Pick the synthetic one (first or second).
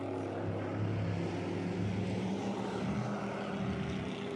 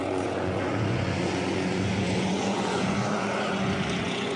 second